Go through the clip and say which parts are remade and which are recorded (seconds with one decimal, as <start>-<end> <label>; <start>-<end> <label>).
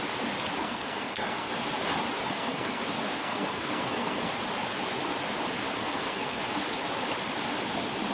0.0-0.6 recorded; 0.6-1.5 remade; 1.5-2.2 recorded; 2.2-2.8 remade; 2.8-3.2 recorded; 3.2-4.3 remade; 4.3-5.8 recorded; 5.8-6.4 remade; 6.4-8.1 recorded